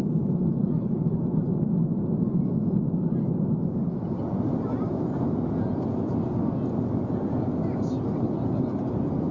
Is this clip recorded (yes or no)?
yes